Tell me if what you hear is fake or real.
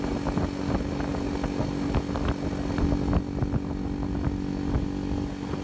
real